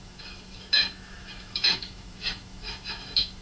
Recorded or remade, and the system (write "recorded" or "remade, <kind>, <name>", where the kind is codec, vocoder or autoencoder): remade, autoencoder, DAC-VAE